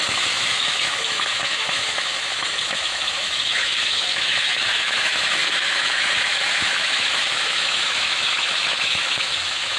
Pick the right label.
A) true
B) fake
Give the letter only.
B